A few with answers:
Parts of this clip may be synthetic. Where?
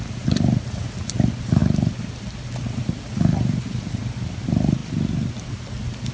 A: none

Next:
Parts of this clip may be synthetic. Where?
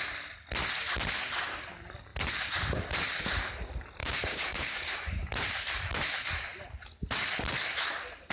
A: 4.0-4.9 (codec, DAC)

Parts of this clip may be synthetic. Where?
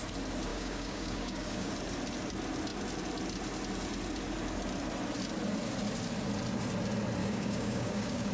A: 0.5-1.7 (codec, DAC); 7.2-8.3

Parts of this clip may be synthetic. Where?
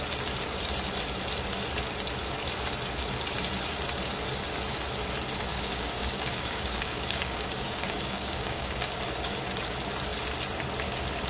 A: 5.5-8.9 (codec, DAC)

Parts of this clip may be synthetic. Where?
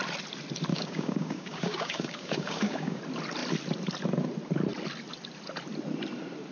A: 0.7-3.0 (codec, DAC)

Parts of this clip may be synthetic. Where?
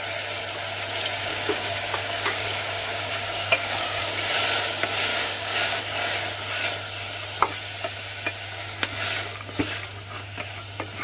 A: 1.3-4.0 (codec, DAC); 5.1-5.8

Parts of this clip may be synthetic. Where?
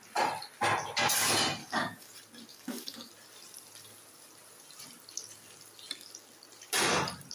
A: 1.6-2.1 (codec, DAC); 2.5-3.1